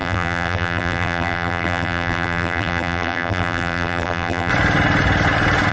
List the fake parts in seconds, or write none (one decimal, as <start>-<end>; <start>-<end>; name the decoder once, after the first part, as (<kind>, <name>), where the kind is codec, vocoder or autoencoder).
0.0-4.5 (vocoder, BigVGAN v2)